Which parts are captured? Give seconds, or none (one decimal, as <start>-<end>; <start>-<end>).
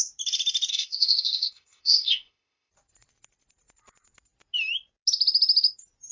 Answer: 0.0-0.7; 2.7-6.1